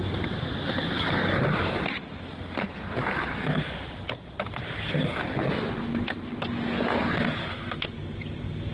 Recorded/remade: recorded